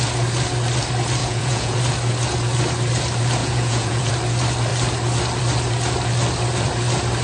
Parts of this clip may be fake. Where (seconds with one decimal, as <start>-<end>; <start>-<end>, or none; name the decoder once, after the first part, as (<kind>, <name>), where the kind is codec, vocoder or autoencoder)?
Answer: 1.2-1.8 (vocoder, Vocos); 3.4-4.1